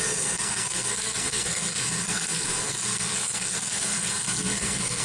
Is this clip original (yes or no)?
no